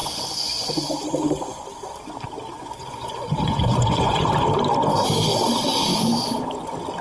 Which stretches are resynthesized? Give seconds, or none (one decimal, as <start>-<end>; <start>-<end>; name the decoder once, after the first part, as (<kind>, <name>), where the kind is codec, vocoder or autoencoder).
0.0-0.7 (vocoder, Vocos); 2.5-4.3